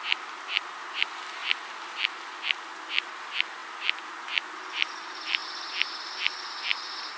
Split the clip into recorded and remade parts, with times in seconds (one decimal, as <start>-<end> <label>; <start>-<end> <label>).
0.0-7.2 recorded